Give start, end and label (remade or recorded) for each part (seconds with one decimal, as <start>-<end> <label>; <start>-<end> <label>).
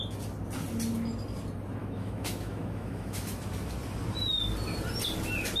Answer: 0.0-1.8 recorded; 1.8-3.4 remade; 3.4-5.6 recorded